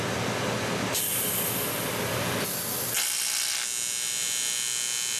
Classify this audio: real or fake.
real